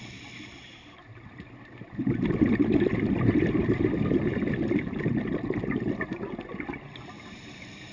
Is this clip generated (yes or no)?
no